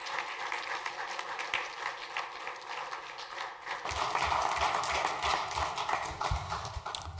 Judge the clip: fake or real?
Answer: real